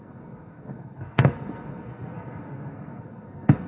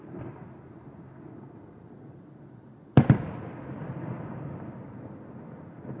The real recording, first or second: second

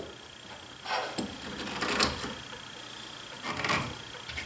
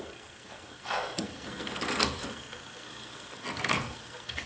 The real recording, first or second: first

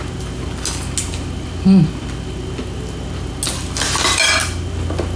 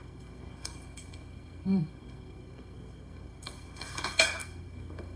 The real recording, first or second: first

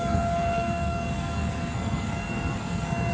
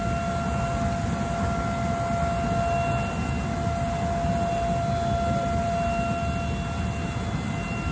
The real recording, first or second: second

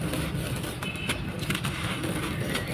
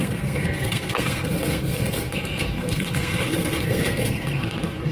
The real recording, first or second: first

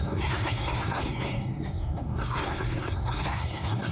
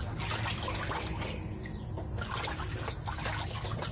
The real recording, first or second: second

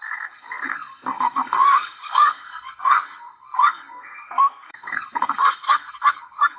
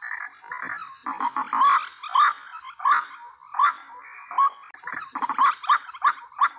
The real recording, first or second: second